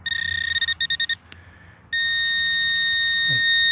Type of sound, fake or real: real